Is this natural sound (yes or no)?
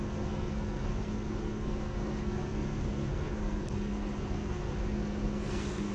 no